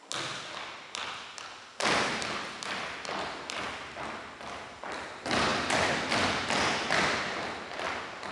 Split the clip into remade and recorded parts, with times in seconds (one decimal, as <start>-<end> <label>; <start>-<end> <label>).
0.0-8.3 recorded